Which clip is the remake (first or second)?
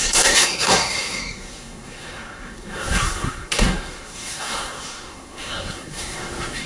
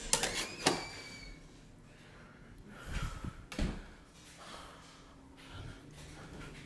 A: first